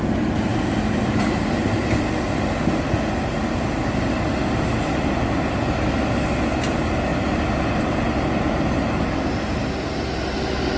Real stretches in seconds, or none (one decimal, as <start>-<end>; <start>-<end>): 0.0-10.8